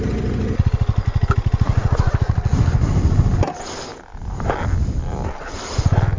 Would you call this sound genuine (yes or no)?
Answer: yes